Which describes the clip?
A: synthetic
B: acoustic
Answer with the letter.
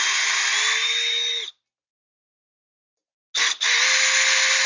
B